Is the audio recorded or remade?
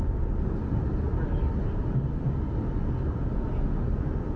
recorded